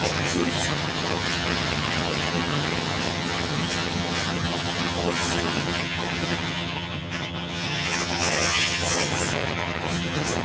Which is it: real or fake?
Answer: fake